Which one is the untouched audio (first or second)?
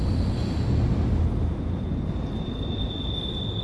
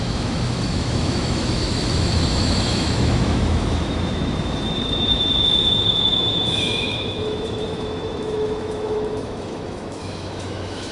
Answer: first